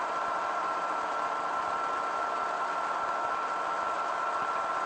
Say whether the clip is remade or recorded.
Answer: recorded